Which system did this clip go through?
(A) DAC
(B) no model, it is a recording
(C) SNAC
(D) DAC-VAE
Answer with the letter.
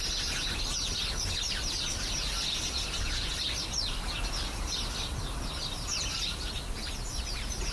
B